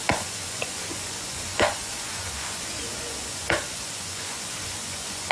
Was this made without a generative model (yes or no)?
no